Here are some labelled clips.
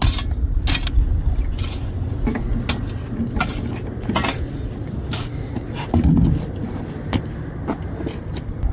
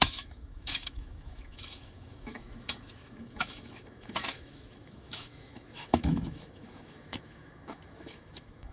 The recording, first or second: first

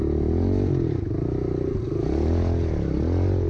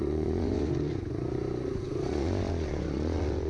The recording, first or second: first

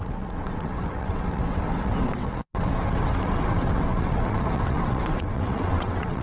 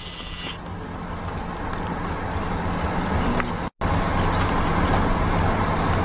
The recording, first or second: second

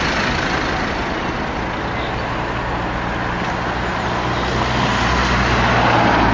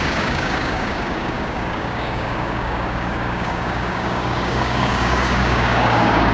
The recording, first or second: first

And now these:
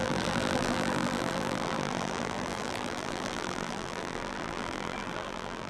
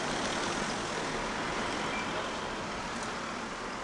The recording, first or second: second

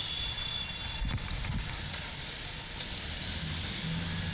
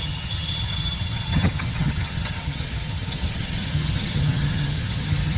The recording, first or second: first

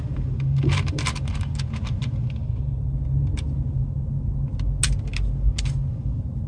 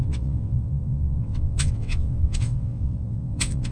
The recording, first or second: first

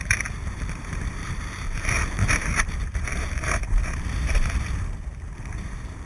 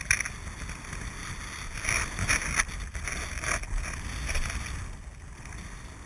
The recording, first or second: second